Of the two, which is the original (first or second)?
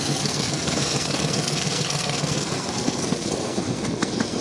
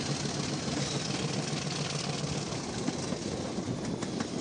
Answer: second